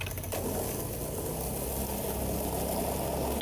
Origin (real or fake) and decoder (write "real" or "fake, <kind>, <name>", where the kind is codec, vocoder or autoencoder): real